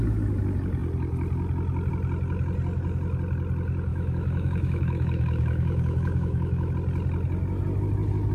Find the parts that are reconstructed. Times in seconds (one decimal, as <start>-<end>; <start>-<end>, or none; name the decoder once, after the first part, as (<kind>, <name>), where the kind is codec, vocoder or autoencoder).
3.9-6.7 (autoencoder, DAC-VAE)